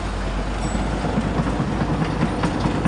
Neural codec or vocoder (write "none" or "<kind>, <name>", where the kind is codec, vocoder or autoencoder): none